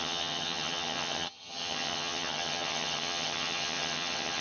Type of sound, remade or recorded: remade